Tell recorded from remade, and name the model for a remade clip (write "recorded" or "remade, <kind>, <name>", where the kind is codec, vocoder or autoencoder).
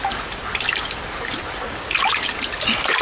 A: recorded